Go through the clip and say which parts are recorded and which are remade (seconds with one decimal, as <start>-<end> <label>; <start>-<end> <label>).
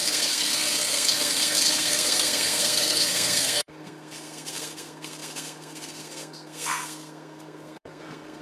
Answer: 0.0-8.4 remade